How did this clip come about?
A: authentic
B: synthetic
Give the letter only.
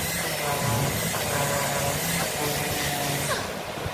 A